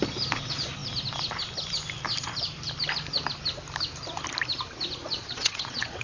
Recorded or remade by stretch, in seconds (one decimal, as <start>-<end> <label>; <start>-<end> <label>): 0.0-5.0 recorded; 5.0-6.0 remade